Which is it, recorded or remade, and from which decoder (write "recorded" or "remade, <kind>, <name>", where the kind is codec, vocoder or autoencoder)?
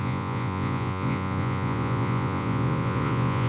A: remade, vocoder, Vocos